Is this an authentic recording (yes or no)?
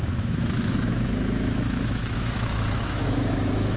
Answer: no